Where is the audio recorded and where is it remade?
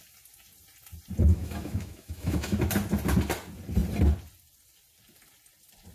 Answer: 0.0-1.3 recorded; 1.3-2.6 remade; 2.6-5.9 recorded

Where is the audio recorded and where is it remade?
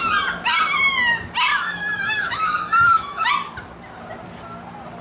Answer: 0.0-1.5 recorded; 1.5-3.3 remade; 3.3-5.0 recorded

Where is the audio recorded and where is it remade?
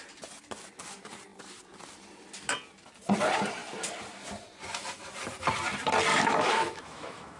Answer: 0.0-6.1 recorded; 6.1-7.4 remade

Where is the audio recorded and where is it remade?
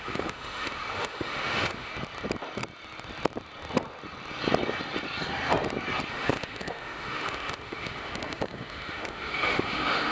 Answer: 0.0-1.9 remade; 1.9-6.1 recorded; 6.1-10.1 remade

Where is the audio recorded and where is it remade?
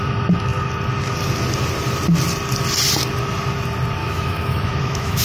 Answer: 0.0-4.0 recorded; 4.0-5.2 remade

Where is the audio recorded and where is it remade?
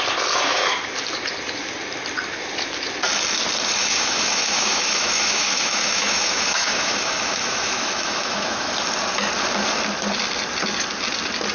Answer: 0.0-3.8 recorded; 3.8-8.7 remade; 8.7-11.5 recorded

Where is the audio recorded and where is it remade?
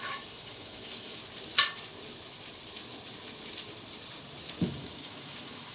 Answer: 0.0-1.2 remade; 1.2-4.6 recorded; 4.6-5.7 remade